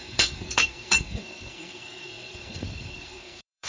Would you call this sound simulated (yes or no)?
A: yes